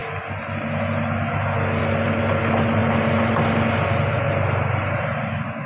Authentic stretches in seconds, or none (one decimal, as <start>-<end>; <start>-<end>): 0.0-5.7

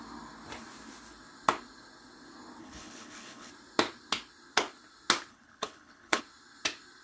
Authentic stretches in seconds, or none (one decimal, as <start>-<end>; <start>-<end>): 0.0-2.6; 3.5-5.3; 6.2-7.0

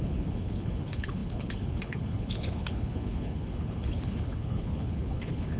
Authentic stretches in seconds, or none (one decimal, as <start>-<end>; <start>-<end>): none

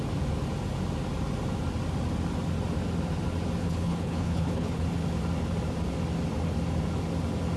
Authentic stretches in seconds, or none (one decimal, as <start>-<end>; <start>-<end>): 0.0-3.6; 4.8-7.6